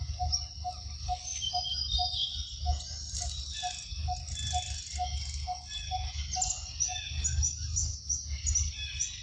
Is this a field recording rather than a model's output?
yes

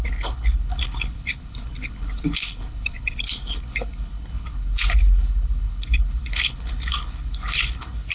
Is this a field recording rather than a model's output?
no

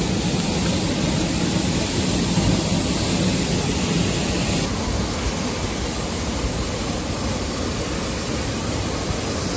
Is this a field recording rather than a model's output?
yes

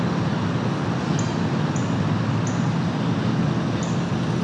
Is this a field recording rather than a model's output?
yes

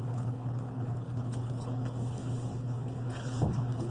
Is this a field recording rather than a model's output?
no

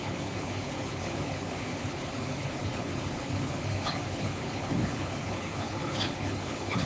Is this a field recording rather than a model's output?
no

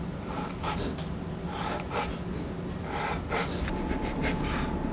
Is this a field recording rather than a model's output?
yes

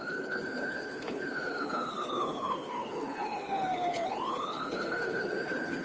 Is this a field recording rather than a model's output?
no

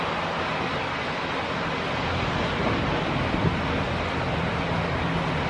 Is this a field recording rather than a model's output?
yes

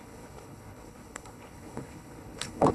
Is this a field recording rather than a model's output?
no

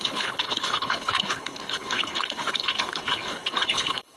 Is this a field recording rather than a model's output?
no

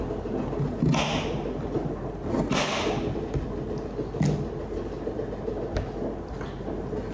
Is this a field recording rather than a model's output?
yes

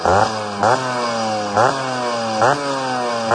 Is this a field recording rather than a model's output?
yes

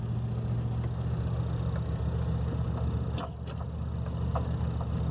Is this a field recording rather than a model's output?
yes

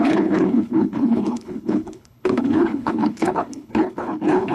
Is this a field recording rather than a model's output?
no